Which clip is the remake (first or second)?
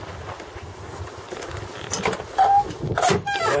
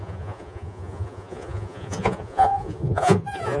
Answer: second